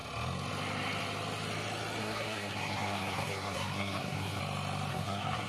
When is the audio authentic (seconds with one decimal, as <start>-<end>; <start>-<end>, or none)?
0.0-2.0; 4.4-4.9